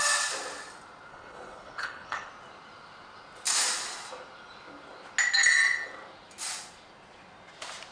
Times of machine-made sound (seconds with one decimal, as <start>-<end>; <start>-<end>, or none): 1.1-2.3